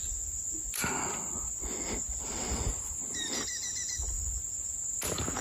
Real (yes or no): yes